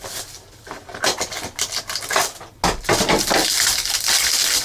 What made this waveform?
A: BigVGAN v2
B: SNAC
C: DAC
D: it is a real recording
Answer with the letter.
D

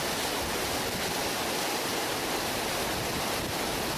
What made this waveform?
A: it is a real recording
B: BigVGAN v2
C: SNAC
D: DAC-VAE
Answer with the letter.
A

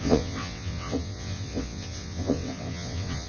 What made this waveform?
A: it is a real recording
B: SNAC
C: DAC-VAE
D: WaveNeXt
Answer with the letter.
D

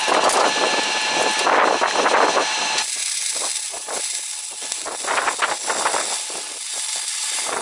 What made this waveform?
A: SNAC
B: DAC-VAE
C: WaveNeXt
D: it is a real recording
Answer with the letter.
D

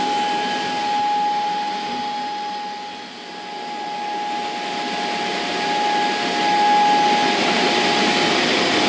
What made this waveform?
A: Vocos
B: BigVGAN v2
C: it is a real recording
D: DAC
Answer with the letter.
C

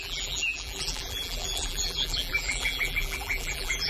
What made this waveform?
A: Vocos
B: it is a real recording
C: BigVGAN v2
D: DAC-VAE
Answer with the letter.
C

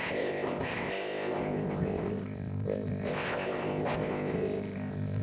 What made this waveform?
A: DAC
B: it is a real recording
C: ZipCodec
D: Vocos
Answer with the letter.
C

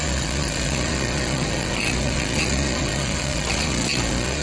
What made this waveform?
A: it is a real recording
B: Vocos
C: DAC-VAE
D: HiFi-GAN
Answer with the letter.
B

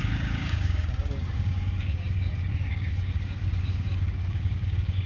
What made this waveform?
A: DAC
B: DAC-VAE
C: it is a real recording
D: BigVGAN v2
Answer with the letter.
A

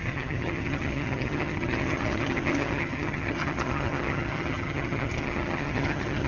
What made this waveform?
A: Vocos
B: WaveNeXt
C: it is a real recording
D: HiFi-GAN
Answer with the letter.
D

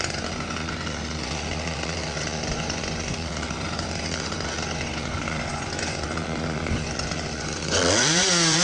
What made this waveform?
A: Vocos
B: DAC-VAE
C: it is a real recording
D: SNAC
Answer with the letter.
A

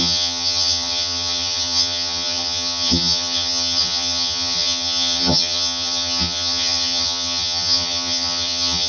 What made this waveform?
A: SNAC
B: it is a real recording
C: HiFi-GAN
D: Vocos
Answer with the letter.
C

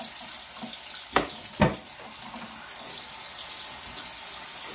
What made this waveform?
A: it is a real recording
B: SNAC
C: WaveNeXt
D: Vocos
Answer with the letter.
A